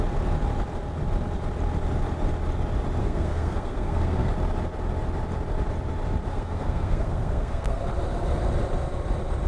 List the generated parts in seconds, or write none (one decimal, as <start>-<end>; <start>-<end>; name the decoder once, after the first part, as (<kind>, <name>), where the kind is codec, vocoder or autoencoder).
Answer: 3.0-4.3 (codec, SNAC); 6.3-7.8